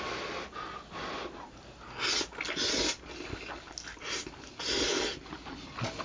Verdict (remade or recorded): recorded